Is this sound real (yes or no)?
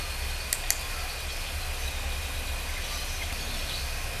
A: yes